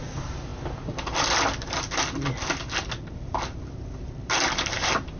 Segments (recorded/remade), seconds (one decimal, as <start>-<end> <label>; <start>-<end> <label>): 0.0-5.2 recorded